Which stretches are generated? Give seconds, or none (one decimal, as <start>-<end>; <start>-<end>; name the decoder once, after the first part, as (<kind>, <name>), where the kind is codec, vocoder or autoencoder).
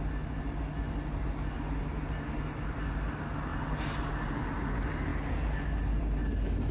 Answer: none